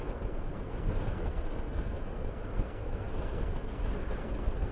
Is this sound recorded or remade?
remade